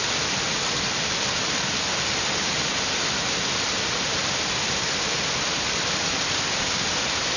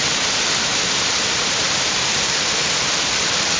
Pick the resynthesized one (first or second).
second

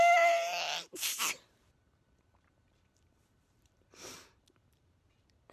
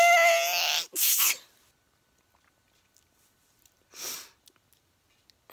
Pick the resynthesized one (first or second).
first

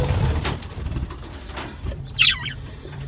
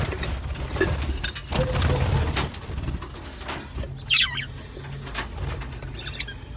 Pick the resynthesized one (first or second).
first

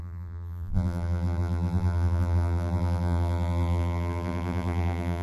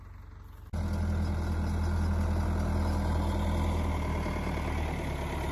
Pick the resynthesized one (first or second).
first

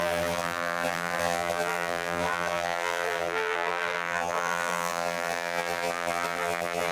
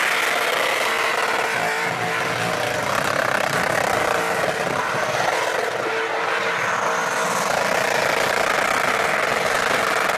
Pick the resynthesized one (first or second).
first